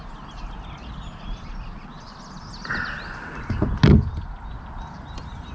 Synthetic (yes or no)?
no